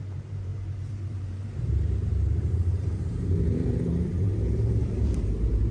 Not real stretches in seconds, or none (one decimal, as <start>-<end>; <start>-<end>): 0.0-5.7